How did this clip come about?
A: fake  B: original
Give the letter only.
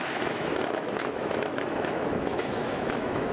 A